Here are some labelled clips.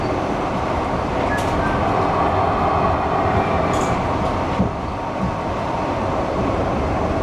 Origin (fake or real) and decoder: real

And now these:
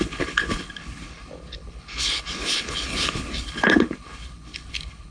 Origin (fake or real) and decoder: fake, codec, HILCodec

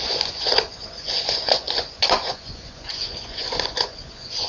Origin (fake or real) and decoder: fake, vocoder, Vocos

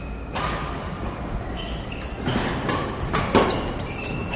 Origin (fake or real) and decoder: real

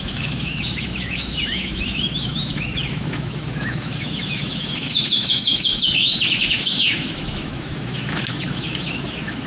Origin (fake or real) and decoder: fake, autoencoder, DAC-VAE